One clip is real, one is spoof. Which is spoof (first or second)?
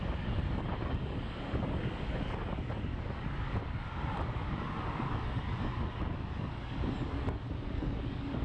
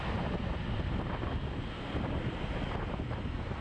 first